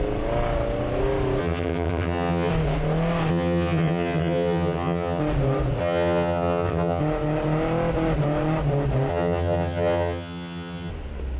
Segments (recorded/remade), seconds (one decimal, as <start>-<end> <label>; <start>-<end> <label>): 0.0-1.4 recorded; 1.4-2.5 remade; 2.5-3.3 recorded; 3.3-5.2 remade; 5.2-5.8 recorded; 5.8-7.0 remade; 7.0-9.1 recorded; 9.1-10.9 remade; 10.9-11.4 recorded